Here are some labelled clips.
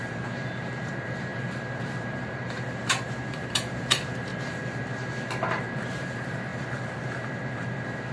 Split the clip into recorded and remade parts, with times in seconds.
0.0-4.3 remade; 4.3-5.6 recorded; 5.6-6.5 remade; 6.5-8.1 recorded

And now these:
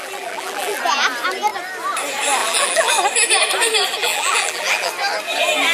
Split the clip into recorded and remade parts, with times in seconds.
0.0-0.8 remade; 0.8-2.4 recorded; 2.4-2.9 remade; 2.9-4.0 recorded; 4.0-4.9 remade; 4.9-5.7 recorded

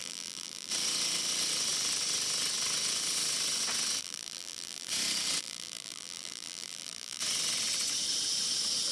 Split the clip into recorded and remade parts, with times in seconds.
0.0-0.7 remade; 0.7-4.0 recorded; 4.0-4.9 remade; 4.9-5.4 recorded; 5.4-7.2 remade; 7.2-8.9 recorded